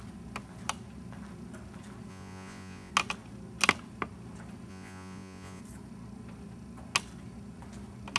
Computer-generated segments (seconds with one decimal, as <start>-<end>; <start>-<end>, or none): 2.1-2.9; 4.7-5.6